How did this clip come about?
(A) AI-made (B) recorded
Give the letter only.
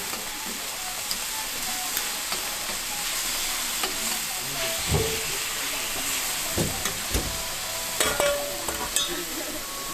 B